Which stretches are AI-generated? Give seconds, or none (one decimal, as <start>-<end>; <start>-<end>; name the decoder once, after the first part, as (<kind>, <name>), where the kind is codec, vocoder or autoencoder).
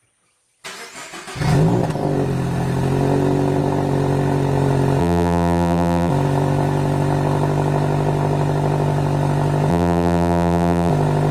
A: 5.0-6.1 (vocoder, BigVGAN v2); 9.7-10.9